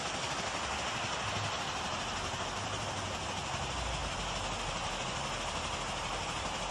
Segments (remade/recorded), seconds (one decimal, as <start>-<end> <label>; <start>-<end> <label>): 0.0-6.7 recorded